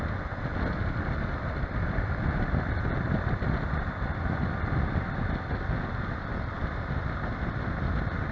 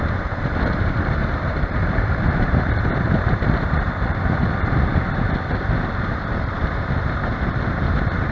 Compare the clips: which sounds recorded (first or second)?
first